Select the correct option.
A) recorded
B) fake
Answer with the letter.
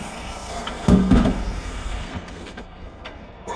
B